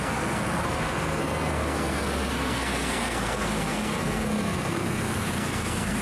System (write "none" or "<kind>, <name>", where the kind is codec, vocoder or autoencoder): codec, SNAC